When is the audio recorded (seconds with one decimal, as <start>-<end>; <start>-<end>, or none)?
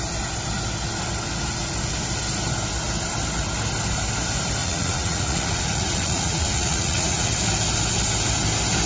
0.0-4.6; 7.3-8.9